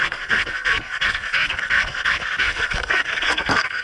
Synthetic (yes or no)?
yes